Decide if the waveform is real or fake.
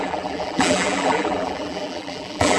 fake